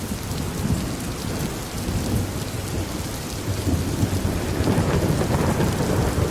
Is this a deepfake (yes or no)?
no